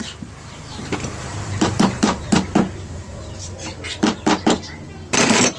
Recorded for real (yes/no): no